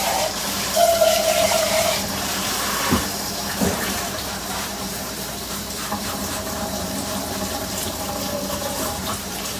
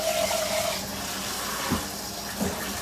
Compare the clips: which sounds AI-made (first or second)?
first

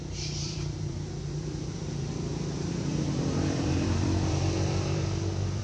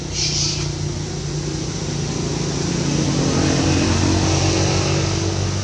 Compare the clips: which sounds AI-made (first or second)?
first